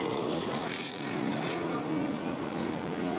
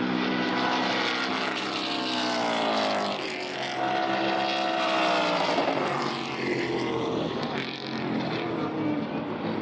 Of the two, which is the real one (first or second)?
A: second